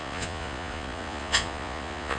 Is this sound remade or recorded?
remade